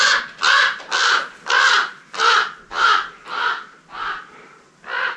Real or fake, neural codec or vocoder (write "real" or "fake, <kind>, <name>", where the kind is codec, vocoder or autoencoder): real